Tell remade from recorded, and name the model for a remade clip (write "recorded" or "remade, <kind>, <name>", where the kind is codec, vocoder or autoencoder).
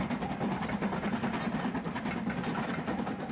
recorded